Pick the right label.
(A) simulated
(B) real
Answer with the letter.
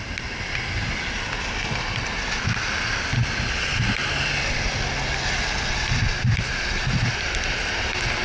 B